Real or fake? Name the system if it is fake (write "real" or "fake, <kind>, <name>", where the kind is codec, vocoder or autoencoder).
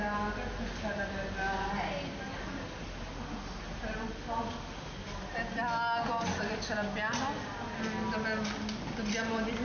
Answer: real